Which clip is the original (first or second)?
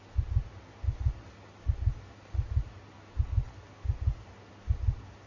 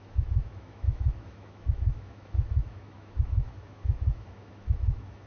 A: first